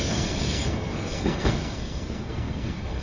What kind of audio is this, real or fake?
fake